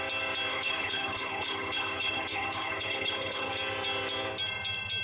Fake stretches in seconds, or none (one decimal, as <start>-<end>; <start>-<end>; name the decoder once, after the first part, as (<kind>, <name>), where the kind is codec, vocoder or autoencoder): 0.5-3.5 (codec, HILCodec)